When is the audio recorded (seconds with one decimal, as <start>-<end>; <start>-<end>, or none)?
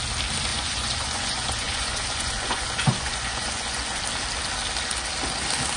0.0-0.5; 4.0-5.8